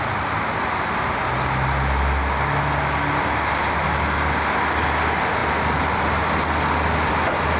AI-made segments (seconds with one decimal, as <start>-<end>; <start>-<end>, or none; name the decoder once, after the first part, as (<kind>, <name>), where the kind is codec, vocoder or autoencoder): none